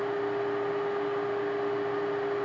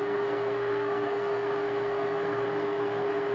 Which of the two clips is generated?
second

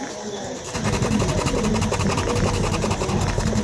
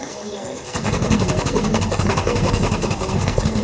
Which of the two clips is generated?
second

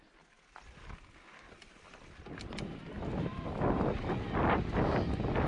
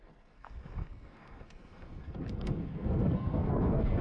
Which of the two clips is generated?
second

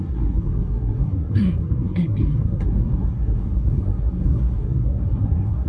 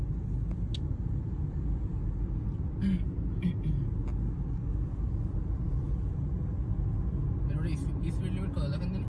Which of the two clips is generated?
first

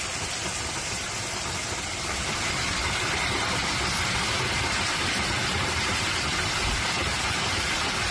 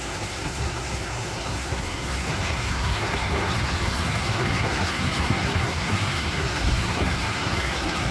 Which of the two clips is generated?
second